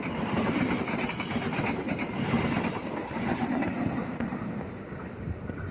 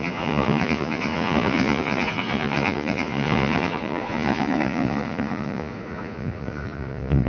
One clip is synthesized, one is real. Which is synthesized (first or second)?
second